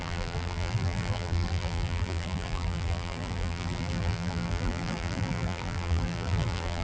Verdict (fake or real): fake